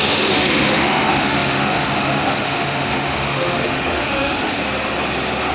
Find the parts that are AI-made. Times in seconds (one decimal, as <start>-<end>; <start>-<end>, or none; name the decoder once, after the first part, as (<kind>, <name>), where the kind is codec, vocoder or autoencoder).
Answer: 0.0-4.6 (autoencoder, DAC-VAE)